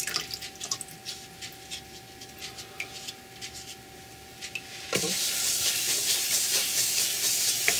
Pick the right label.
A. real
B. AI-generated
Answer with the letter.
A